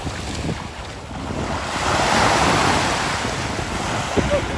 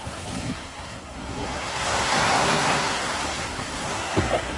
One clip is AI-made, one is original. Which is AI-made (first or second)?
second